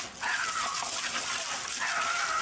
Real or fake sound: real